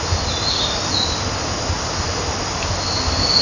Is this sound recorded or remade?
recorded